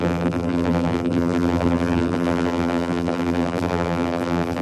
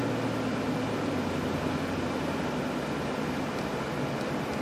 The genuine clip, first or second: second